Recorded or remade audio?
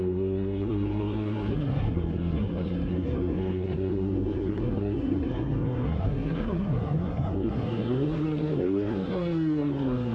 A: remade